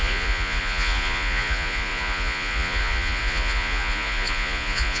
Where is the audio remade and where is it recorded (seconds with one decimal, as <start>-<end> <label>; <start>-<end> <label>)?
0.0-5.0 remade